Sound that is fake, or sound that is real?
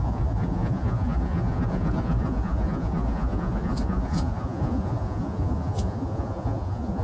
fake